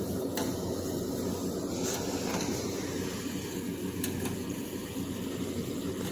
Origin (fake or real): real